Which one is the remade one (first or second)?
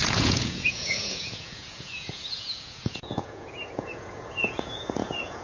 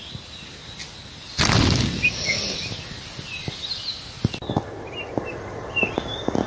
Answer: first